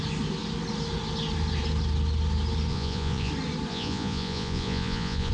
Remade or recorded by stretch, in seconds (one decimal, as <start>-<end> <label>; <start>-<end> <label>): 0.0-2.7 recorded; 2.7-3.3 remade; 3.3-3.7 recorded; 3.7-5.3 remade